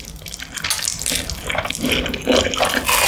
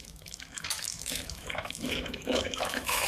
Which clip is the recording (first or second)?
first